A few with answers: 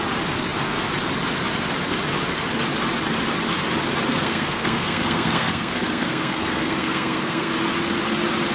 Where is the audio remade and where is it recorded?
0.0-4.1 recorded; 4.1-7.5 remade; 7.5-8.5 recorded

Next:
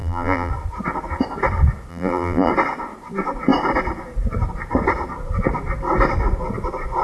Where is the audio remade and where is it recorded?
0.0-0.5 remade; 0.5-1.9 recorded; 1.9-2.5 remade; 2.5-7.0 recorded

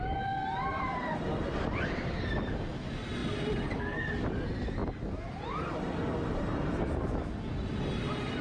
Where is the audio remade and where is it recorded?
0.0-6.5 recorded; 6.5-7.1 remade; 7.1-8.4 recorded

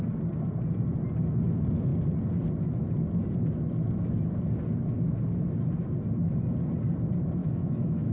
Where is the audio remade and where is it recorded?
0.0-7.4 recorded; 7.4-8.1 remade

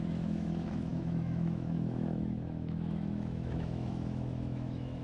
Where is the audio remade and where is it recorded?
0.0-5.0 remade

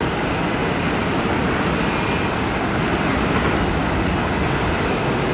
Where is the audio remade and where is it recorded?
0.0-5.3 recorded

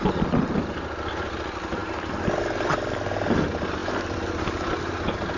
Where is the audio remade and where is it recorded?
0.0-5.4 recorded

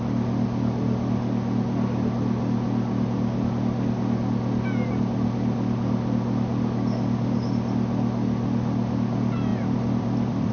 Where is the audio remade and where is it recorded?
0.0-9.5 recorded; 9.5-10.5 remade